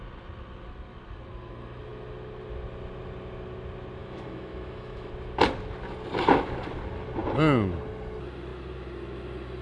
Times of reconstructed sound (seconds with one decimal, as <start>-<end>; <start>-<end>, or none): 4.0-5.1